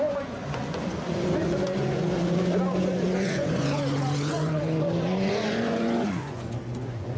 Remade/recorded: remade